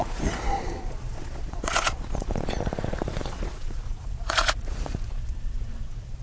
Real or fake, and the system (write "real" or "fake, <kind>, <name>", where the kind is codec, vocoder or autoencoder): fake, vocoder, Vocos